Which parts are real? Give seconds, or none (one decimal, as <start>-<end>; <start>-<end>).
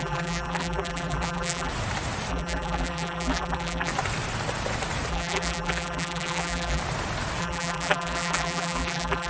1.7-2.3; 3.9-5.1; 6.8-7.4